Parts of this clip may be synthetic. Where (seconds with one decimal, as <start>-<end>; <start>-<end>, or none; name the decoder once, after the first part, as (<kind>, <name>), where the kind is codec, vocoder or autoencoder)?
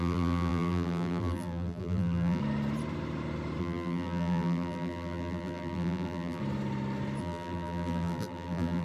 0.0-2.4 (vocoder, BigVGAN v2); 3.6-6.4; 7.2-8.8